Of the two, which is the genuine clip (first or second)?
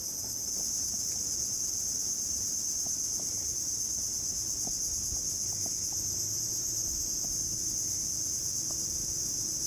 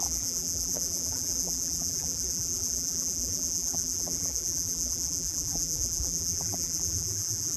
first